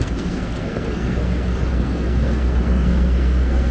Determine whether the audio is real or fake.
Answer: fake